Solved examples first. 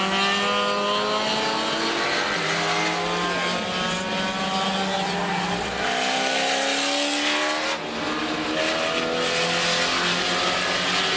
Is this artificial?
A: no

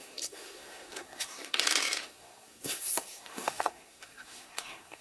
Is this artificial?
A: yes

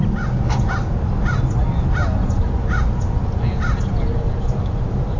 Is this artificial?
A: no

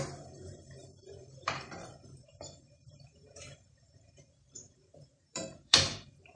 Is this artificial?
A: yes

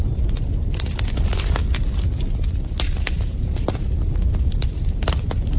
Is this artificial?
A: no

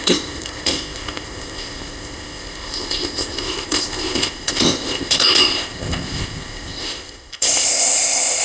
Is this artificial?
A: yes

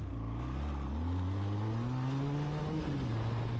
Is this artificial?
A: no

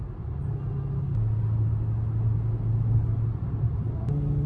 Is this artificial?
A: no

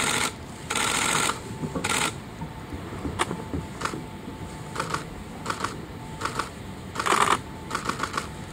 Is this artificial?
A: no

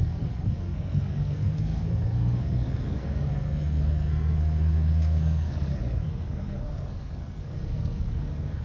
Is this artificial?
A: yes